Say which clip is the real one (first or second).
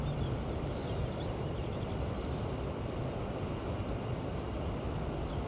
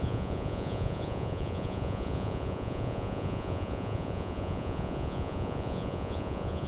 first